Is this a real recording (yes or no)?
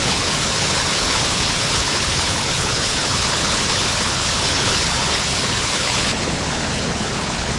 no